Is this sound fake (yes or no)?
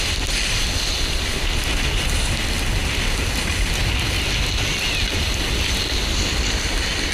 no